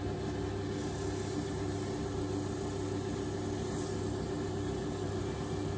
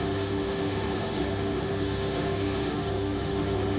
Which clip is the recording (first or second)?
first